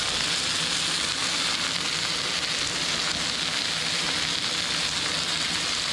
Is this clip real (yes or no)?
yes